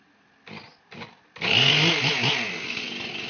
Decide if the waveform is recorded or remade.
recorded